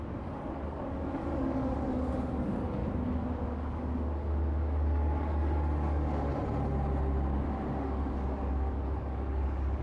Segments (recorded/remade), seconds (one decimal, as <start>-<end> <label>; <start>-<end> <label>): 0.0-2.8 remade; 2.8-3.4 recorded; 3.4-6.3 remade; 6.3-7.7 recorded; 7.7-9.8 remade